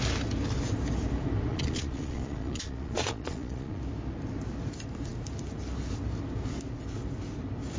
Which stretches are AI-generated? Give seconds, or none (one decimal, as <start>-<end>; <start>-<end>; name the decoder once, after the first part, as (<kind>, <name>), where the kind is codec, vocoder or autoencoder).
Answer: 1.5-3.8 (vocoder, Vocos)